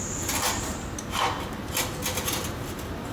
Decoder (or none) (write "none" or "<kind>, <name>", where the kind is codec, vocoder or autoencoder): none